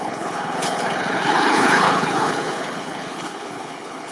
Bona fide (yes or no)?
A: no